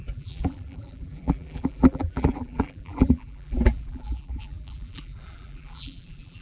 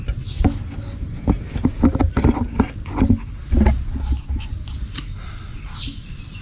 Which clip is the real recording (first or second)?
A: second